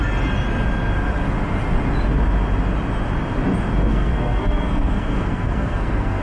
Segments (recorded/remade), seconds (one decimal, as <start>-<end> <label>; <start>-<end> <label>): 0.0-3.9 recorded; 3.9-6.2 remade